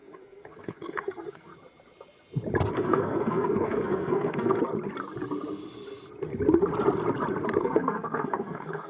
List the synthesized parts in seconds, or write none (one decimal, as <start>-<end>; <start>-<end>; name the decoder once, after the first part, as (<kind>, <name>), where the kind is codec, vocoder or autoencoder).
0.0-1.5 (codec, SNAC); 2.7-4.6; 7.6-8.9